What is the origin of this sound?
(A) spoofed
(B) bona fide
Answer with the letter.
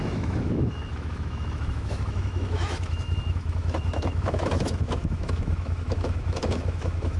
A